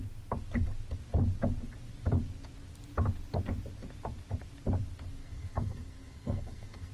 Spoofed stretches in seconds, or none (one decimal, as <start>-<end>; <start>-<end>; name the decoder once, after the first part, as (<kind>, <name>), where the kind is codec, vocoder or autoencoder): 5.2-6.9 (codec, SNAC)